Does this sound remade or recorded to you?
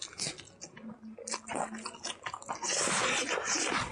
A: recorded